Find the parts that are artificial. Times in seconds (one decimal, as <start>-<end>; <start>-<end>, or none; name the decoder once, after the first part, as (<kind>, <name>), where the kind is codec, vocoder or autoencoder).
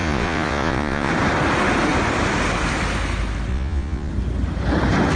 0.0-1.1 (vocoder, Vocos); 3.5-4.1